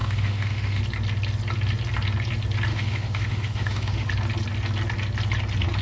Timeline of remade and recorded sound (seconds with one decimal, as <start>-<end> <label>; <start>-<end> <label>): 0.0-0.8 remade; 0.8-2.7 recorded; 2.7-4.1 remade; 4.1-5.8 recorded